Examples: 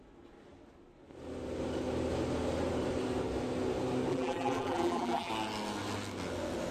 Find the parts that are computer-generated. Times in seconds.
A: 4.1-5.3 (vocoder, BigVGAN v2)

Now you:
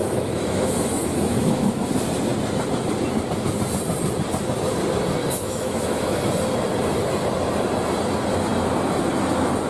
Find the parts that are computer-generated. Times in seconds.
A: 0.0-1.9 (autoencoder, DAC-VAE); 5.2-6.2

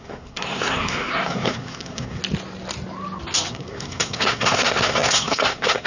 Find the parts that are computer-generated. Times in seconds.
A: 0.0-2.2 (codec, SNAC); 3.5-5.9

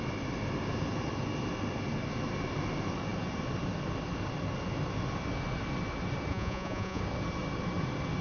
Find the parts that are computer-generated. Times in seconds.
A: 6.3-7.0 (vocoder, Vocos)

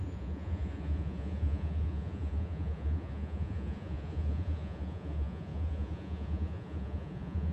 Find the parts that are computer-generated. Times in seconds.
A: 0.0-7.5 (vocoder, Vocos)

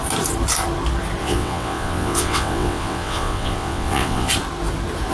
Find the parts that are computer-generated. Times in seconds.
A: 1.2-4.3 (vocoder, WaveNeXt)